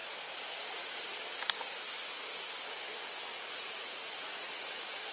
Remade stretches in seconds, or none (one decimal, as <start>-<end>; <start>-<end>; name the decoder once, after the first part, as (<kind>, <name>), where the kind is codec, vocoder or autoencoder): 3.3-5.1 (vocoder, Vocos)